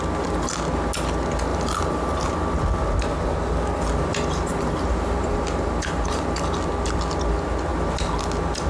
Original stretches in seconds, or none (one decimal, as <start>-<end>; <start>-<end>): 0.0-1.5; 2.3-4.5; 6.4-8.7